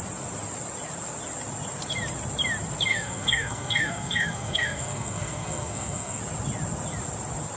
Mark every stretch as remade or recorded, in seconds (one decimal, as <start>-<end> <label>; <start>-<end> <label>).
0.0-2.9 recorded; 2.9-6.2 remade; 6.2-7.6 recorded